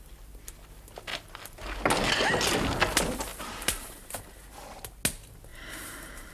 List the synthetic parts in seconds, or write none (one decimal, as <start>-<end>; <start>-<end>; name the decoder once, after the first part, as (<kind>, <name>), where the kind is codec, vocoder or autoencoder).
1.1-1.8 (vocoder, BigVGAN v2); 3.3-4.1; 5.5-6.3